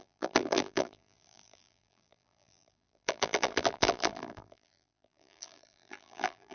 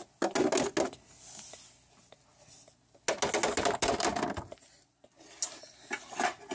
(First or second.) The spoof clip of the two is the first